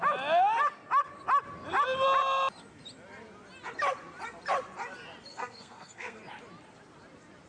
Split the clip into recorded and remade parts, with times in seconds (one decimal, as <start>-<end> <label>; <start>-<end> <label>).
0.0-5.3 recorded; 5.3-6.2 remade; 6.2-7.5 recorded